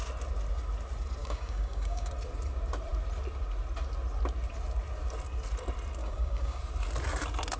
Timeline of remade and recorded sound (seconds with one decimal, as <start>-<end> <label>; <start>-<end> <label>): 0.0-1.2 recorded; 1.2-2.1 remade; 2.1-6.0 recorded; 6.0-6.6 remade; 6.6-7.6 recorded